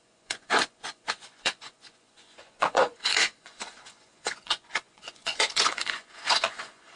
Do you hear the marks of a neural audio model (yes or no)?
yes